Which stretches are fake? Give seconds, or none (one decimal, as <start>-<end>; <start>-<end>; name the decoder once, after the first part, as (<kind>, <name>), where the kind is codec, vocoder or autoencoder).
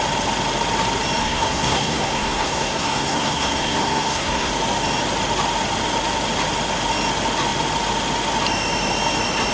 1.2-4.5 (codec, SNAC)